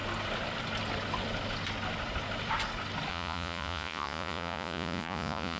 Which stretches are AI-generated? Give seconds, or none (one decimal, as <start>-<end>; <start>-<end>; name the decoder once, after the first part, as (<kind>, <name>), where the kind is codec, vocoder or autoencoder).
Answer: 3.1-5.6 (vocoder, Vocos)